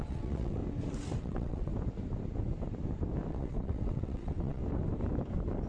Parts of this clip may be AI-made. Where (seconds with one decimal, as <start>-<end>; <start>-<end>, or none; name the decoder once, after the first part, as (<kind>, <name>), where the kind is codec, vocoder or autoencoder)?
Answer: 0.0-0.6 (vocoder, WaveNeXt); 1.2-1.7; 3.3-4.6